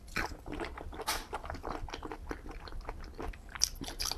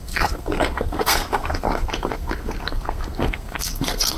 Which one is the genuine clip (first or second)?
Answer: first